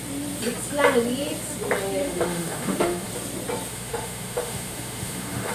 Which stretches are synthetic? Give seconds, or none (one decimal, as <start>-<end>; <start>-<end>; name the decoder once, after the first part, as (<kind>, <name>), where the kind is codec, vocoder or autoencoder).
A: 2.0-3.1 (autoencoder, DAC-VAE); 3.7-5.5